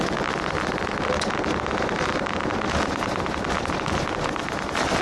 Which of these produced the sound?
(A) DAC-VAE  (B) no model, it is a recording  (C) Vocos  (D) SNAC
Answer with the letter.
B